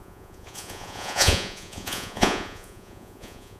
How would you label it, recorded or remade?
remade